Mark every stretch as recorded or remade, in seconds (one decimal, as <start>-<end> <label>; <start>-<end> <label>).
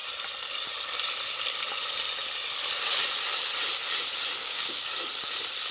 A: 0.0-4.4 recorded; 4.4-4.9 remade; 4.9-5.7 recorded